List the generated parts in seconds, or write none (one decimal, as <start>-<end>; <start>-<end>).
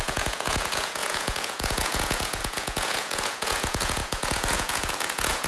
0.0-5.5